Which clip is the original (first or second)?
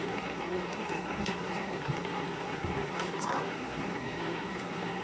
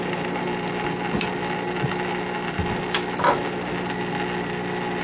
second